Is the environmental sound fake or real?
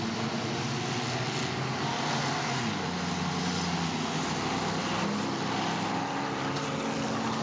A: real